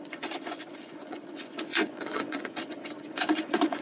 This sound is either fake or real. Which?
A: fake